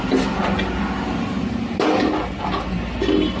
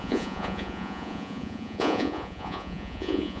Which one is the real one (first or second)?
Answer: first